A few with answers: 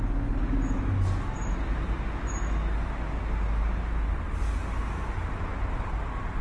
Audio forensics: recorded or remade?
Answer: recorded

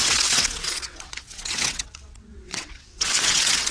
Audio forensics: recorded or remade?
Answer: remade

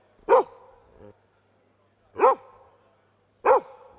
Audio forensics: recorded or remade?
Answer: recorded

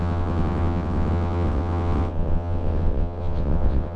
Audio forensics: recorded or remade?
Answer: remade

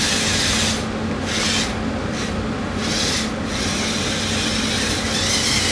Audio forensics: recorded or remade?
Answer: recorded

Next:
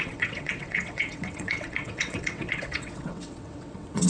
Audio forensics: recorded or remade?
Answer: remade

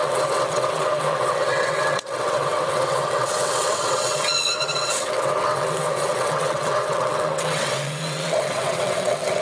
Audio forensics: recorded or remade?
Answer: remade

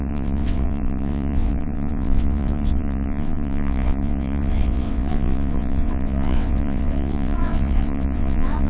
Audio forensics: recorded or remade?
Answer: remade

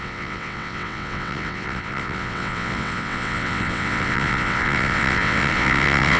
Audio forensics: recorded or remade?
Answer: remade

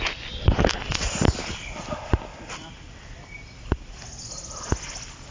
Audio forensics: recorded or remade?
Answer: recorded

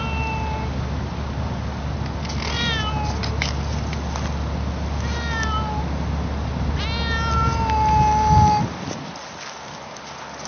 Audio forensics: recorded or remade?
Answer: recorded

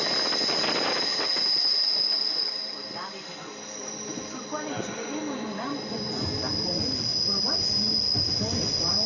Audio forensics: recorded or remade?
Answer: recorded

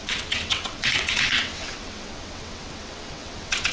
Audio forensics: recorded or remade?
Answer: remade